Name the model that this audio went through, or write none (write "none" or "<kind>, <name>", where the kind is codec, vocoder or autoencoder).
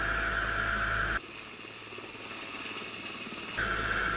none